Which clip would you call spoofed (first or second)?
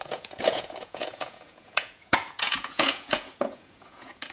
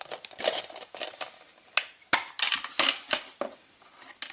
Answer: first